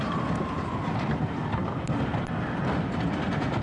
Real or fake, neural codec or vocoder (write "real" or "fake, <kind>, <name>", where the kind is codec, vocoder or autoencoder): real